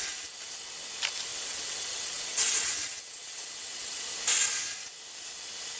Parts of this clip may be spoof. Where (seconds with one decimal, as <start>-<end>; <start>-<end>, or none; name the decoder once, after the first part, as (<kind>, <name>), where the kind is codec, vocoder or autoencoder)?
1.3-4.1 (vocoder, WaveNeXt)